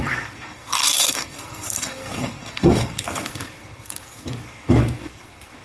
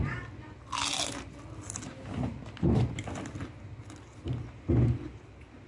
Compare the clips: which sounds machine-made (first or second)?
first